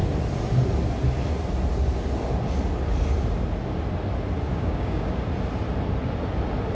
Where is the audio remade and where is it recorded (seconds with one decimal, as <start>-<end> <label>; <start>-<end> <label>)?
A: 0.0-4.5 recorded; 4.5-5.2 remade; 5.2-6.7 recorded